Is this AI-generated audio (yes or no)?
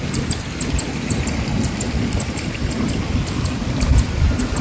yes